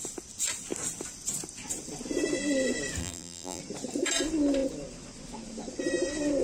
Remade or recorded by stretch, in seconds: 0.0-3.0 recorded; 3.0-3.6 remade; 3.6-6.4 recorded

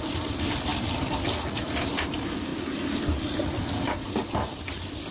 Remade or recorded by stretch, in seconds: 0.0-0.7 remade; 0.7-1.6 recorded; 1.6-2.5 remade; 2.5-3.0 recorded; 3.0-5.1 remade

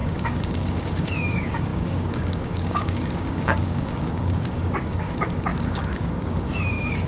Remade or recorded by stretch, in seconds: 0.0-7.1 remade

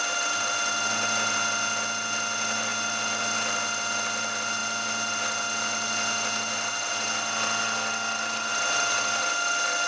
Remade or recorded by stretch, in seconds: 0.0-9.9 recorded

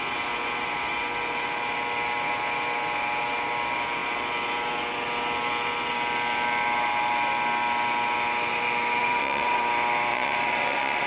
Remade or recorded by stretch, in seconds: 0.0-9.0 recorded; 9.0-9.6 remade; 9.6-10.1 recorded; 10.1-11.1 remade